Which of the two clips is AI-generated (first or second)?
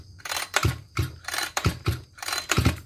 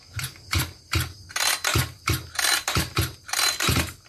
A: first